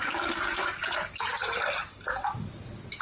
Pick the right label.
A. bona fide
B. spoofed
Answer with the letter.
A